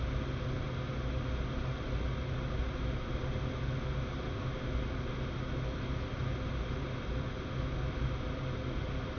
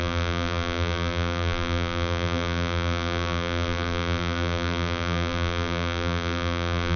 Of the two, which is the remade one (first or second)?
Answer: second